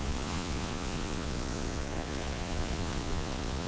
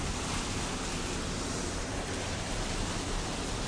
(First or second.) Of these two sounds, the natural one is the second